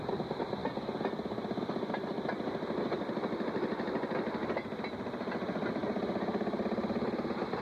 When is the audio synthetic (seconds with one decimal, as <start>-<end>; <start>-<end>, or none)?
none